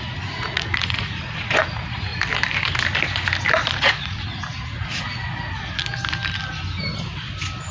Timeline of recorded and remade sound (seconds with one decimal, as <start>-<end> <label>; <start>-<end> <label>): 0.0-2.1 remade; 2.1-3.7 recorded; 3.7-5.2 remade; 5.2-7.7 recorded